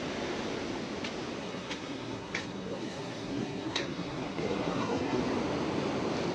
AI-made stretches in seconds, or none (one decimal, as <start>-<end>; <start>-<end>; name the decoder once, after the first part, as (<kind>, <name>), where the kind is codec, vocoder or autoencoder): 1.4-5.2 (codec, SNAC)